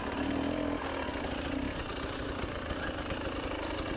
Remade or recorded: recorded